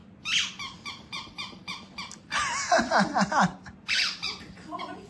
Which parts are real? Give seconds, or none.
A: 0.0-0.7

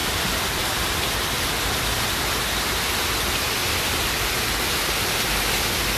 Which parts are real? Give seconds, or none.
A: 1.6-3.6; 4.3-6.0

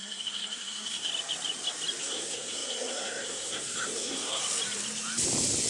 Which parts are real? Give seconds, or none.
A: 1.1-2.0; 4.4-5.7

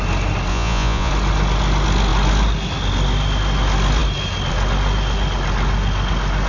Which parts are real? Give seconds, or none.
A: 0.0-0.5; 1.1-6.5

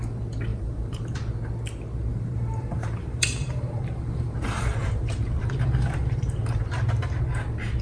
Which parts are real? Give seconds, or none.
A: 0.0-0.5; 1.2-2.1; 6.8-7.8

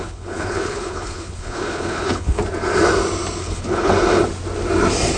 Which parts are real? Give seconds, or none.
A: 2.4-3.4; 3.9-5.2